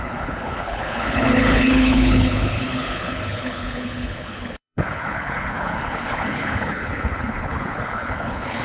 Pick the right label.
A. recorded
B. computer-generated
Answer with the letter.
B